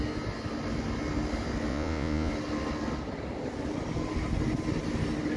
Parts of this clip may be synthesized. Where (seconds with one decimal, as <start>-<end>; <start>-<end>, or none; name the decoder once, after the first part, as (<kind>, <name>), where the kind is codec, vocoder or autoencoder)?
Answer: 1.7-2.3 (vocoder, Vocos)